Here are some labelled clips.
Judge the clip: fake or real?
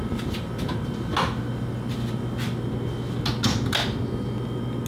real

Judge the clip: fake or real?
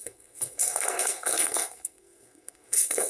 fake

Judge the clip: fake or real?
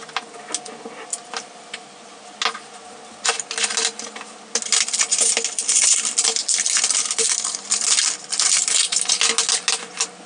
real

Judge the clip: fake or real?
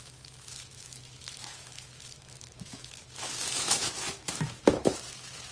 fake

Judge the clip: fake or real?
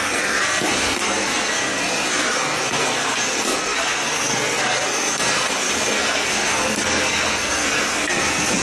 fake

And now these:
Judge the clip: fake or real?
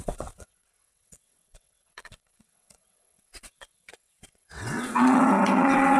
fake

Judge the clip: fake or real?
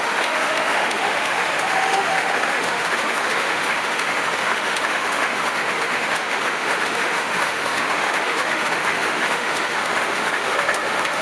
fake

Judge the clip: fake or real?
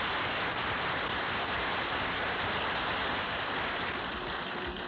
real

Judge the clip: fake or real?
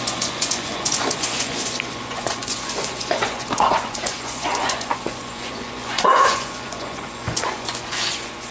fake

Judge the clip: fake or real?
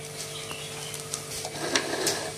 real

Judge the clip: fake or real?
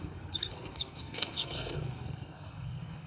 fake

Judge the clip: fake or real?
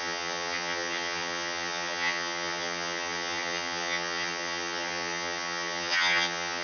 fake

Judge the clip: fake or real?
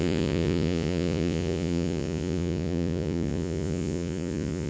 fake